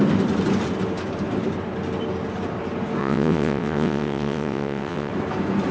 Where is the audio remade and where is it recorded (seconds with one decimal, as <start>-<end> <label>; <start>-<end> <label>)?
0.0-3.0 recorded; 3.0-5.1 remade; 5.1-5.7 recorded